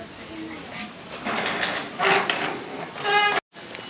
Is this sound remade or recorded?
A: recorded